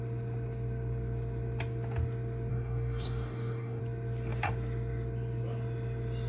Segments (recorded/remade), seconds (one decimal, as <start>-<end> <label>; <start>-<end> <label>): 0.0-2.5 recorded; 2.5-3.8 remade; 3.8-6.3 recorded